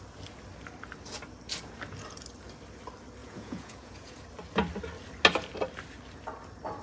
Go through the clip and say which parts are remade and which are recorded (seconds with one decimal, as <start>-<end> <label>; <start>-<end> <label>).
0.0-3.2 recorded; 3.2-4.2 remade; 4.2-6.8 recorded

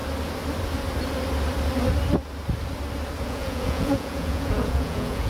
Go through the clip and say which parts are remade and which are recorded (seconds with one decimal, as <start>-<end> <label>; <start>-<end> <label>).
0.0-3.2 recorded; 3.2-5.3 remade

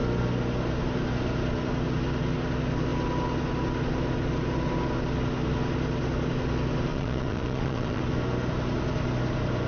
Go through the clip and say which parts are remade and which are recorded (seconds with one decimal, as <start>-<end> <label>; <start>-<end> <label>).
0.0-6.9 recorded; 6.9-8.0 remade; 8.0-9.7 recorded

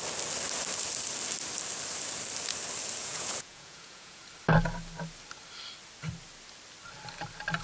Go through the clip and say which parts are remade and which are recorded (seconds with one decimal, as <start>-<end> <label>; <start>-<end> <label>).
0.0-3.0 recorded; 3.0-4.2 remade; 4.2-7.6 recorded

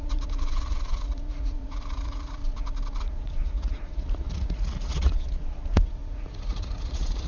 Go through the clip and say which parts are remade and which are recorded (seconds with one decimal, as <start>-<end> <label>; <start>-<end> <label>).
0.0-2.4 remade; 2.4-3.0 recorded; 3.0-7.3 remade

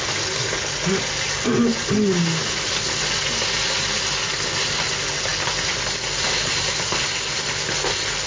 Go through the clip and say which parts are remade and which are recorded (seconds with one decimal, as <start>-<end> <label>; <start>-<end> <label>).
0.0-8.3 recorded